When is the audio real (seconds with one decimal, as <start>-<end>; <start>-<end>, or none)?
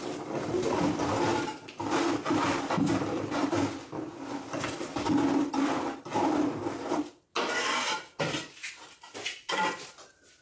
0.0-10.4